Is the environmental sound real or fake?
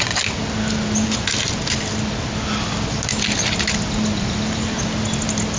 real